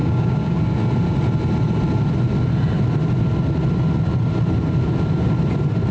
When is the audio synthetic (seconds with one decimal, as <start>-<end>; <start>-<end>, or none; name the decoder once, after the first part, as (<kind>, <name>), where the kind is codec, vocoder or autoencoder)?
0.0-0.6 (codec, DAC)